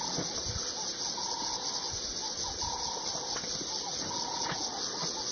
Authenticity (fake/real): real